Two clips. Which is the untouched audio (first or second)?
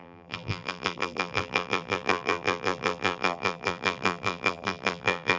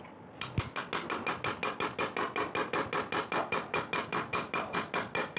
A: second